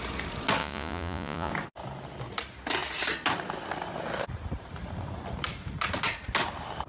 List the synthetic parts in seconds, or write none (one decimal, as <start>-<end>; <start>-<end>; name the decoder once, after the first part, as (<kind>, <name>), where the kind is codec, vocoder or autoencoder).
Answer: 0.6-1.5 (vocoder, Vocos)